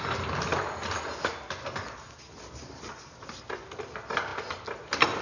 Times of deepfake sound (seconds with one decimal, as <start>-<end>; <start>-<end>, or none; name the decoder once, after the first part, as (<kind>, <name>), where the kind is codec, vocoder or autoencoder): none